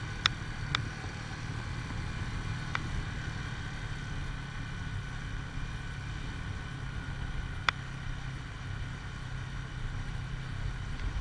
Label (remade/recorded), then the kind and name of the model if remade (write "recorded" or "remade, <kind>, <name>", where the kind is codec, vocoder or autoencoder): recorded